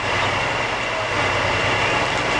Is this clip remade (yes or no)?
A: no